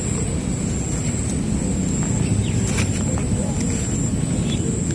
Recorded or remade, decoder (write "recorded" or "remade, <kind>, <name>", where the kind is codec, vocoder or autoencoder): recorded